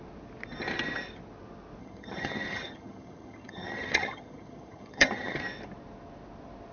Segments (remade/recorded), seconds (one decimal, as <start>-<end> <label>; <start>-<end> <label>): 0.0-1.8 recorded; 1.8-5.4 remade; 5.4-6.7 recorded